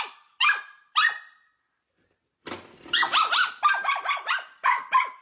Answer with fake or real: real